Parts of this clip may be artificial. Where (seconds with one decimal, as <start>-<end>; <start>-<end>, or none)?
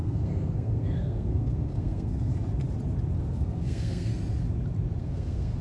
0.0-2.3; 3.2-4.1; 5.0-5.6